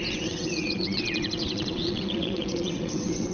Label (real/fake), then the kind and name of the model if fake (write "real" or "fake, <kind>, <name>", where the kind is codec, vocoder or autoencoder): fake, vocoder, WaveNeXt